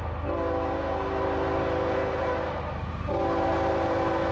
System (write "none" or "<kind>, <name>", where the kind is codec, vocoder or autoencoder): none